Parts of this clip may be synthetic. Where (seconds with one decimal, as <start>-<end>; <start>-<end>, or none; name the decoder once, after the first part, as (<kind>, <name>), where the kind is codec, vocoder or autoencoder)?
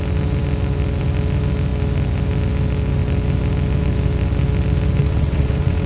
5.0-5.9 (vocoder, WaveNeXt)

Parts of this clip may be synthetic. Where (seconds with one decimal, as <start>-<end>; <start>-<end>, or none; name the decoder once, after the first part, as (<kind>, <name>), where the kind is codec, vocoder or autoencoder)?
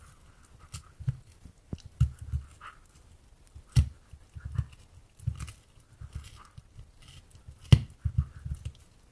none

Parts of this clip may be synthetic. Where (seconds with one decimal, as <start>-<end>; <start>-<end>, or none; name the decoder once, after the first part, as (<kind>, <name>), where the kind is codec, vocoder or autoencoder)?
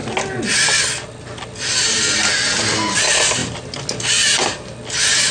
none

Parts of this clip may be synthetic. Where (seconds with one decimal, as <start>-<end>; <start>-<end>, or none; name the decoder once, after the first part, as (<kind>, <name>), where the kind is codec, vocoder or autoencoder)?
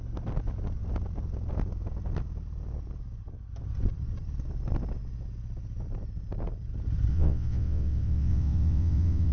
7.1-9.3 (vocoder, WaveNeXt)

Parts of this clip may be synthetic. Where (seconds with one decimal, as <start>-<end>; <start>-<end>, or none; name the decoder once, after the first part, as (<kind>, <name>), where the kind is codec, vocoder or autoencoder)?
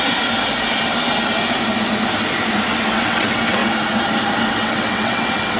2.7-3.6 (vocoder, WaveNeXt); 4.4-5.6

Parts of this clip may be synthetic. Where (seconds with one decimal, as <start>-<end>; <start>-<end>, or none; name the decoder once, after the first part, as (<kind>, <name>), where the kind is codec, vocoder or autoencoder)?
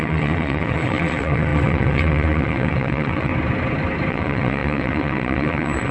0.0-3.3 (vocoder, WaveNeXt); 4.1-5.9